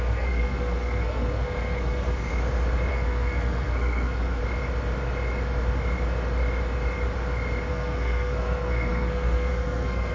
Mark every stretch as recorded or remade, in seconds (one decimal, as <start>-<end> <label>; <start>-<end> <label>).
0.0-2.3 remade; 2.3-2.9 recorded; 2.9-4.4 remade; 4.4-7.7 recorded; 7.7-10.1 remade